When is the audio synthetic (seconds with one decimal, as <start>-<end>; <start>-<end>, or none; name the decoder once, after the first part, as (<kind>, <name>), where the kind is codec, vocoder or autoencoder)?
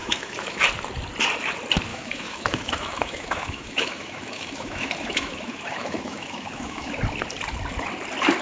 0.0-0.6 (autoencoder, DAC-VAE); 1.9-6.9